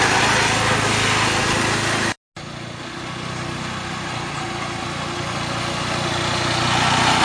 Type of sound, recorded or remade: recorded